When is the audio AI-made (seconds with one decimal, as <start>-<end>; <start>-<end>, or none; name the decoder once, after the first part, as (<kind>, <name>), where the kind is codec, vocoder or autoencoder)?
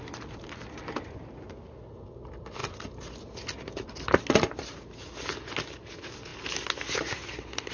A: none